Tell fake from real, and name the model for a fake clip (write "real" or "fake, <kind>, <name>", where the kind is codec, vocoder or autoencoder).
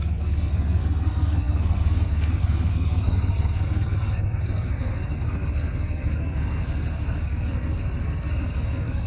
fake, codec, SNAC